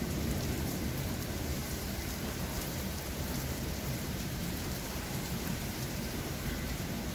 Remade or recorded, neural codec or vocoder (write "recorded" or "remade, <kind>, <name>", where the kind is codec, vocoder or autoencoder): remade, vocoder, BigVGAN v2